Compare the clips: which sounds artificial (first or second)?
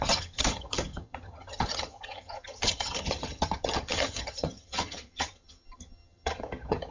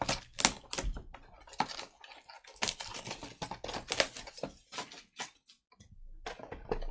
first